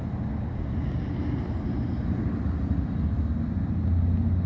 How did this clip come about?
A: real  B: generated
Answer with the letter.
A